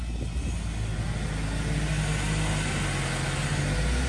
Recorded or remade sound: recorded